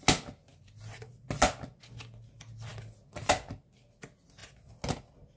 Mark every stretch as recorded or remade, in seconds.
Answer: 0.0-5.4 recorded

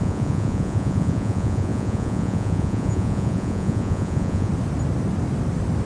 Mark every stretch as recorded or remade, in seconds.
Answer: 0.0-4.5 remade; 4.5-5.9 recorded

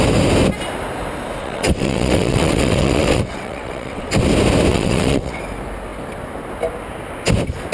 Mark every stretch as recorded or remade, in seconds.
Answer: 0.0-1.4 recorded; 1.4-4.1 remade; 4.1-4.7 recorded; 4.7-5.4 remade; 5.4-7.7 recorded

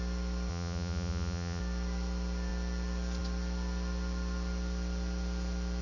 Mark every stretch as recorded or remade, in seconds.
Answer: 0.0-0.5 recorded; 0.5-1.6 remade; 1.6-5.8 recorded

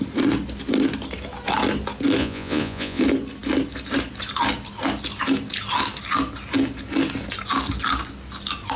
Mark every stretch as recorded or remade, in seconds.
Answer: 0.0-2.2 recorded; 2.2-3.0 remade; 3.0-8.8 recorded

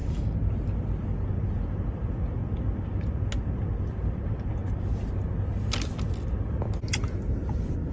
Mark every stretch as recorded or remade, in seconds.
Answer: 0.0-7.9 recorded

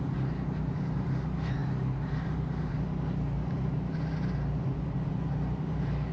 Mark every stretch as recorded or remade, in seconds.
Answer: 0.0-6.1 recorded